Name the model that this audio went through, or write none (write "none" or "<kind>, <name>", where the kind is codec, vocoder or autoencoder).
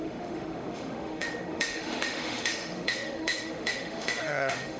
autoencoder, DAC-VAE